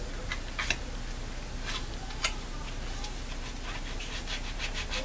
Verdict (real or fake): real